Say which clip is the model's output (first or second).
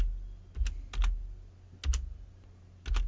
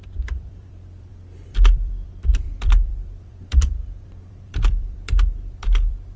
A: second